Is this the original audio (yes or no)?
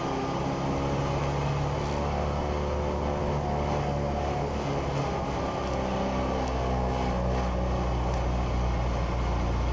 yes